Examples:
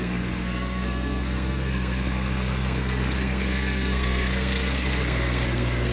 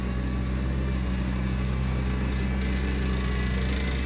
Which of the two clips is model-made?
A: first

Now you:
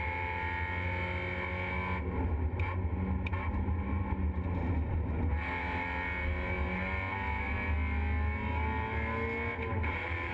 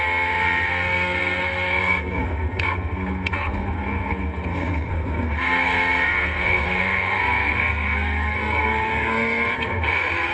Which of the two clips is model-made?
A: second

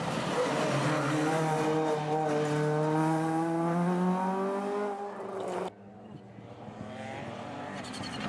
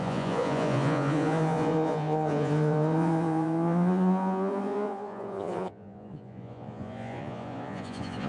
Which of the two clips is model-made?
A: second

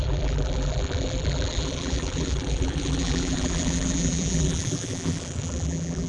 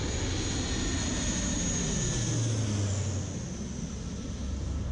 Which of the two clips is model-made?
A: first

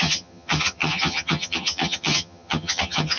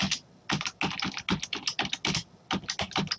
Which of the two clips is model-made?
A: first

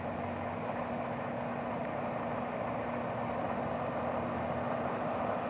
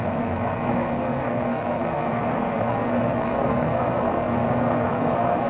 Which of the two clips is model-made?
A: second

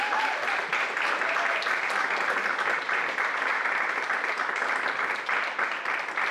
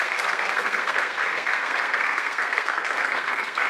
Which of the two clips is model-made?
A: second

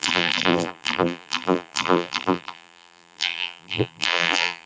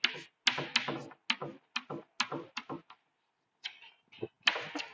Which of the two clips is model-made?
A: first